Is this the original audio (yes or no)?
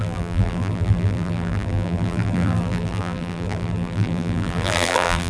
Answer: no